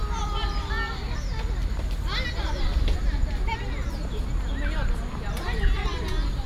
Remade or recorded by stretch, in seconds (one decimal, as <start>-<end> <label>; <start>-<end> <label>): 0.0-6.5 recorded